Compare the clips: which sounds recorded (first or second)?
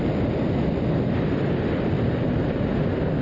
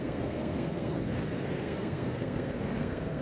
first